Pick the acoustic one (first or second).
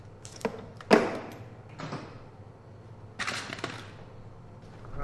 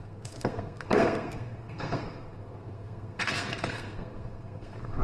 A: first